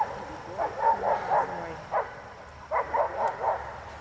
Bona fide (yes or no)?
yes